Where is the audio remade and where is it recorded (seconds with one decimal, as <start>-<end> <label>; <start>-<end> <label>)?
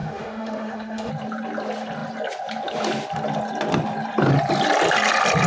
0.0-1.1 remade; 1.1-5.5 recorded